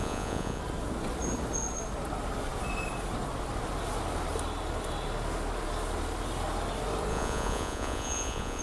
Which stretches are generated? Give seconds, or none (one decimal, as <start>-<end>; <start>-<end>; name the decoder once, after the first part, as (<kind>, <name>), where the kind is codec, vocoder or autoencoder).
0.0-0.6 (vocoder, Vocos); 7.1-8.6